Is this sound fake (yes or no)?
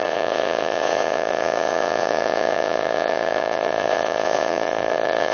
yes